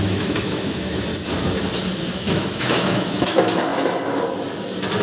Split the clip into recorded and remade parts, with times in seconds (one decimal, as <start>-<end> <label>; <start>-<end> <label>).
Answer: 0.0-1.1 remade; 1.1-2.0 recorded; 2.0-3.7 remade; 3.7-5.0 recorded